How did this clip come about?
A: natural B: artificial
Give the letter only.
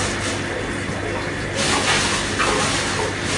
A